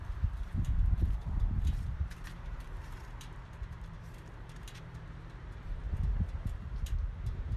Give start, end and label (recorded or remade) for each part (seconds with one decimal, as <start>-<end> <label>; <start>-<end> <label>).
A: 0.0-7.6 remade